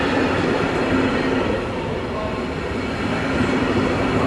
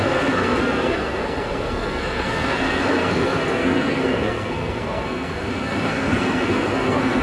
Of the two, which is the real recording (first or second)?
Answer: first